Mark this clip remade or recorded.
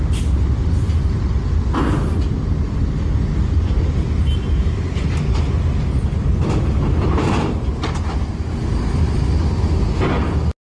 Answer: recorded